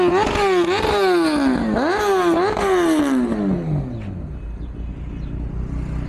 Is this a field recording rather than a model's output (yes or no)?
yes